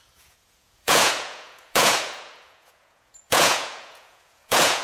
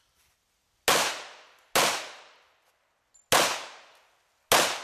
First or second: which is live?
second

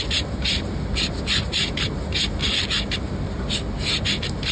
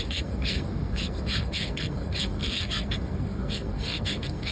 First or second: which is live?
first